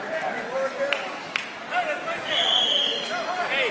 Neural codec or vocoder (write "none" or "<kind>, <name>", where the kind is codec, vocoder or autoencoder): none